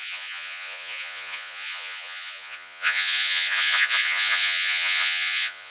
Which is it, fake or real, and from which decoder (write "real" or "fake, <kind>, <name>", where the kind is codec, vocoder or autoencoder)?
fake, vocoder, Vocos